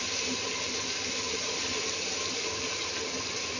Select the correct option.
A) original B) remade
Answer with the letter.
A